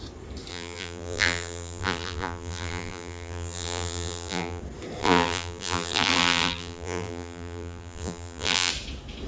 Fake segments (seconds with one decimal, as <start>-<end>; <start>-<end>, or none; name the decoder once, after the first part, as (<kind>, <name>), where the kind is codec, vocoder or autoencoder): 0.5-4.6 (vocoder, BigVGAN v2); 5.0-8.7